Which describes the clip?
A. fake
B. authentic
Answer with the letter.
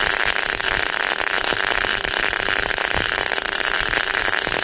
B